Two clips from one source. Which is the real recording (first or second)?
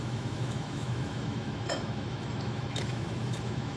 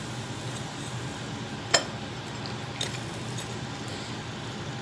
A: second